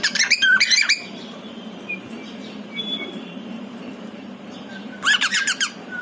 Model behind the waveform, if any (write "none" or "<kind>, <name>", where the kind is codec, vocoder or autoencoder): vocoder, BigVGAN v2